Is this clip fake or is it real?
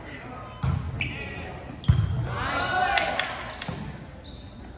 real